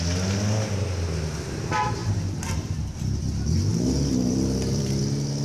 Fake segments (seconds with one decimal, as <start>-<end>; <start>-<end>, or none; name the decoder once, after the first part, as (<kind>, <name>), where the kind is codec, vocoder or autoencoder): 2.0-2.8 (vocoder, BigVGAN v2); 3.7-5.0